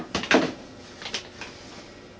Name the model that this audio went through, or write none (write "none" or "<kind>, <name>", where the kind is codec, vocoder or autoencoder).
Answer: none